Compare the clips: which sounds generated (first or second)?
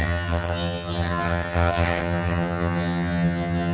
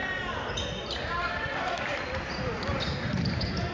first